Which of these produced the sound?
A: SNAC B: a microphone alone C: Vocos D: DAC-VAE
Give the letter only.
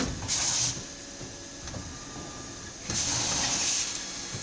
B